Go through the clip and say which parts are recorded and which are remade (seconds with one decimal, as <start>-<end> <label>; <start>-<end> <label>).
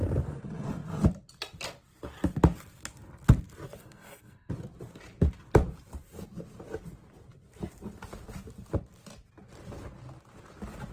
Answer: 0.0-3.8 recorded; 3.8-4.5 remade; 4.5-10.9 recorded